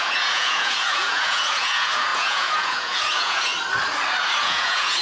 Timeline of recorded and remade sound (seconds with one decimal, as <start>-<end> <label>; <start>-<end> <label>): 0.0-3.5 remade; 3.5-4.4 recorded; 4.4-5.0 remade